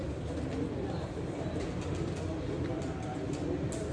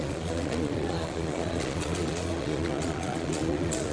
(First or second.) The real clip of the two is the first